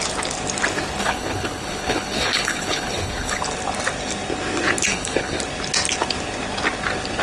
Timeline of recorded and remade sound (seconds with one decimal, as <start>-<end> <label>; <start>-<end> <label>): 0.0-1.0 recorded; 1.0-3.4 remade; 3.4-4.9 recorded; 4.9-5.4 remade; 5.4-7.2 recorded